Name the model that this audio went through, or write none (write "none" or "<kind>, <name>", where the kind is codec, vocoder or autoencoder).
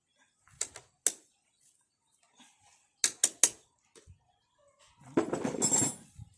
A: none